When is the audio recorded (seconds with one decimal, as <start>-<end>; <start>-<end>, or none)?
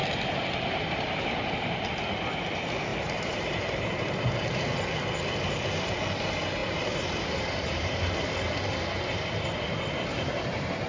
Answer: 0.0-2.9; 4.6-6.6; 8.1-10.1